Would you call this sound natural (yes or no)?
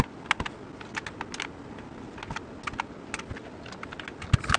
yes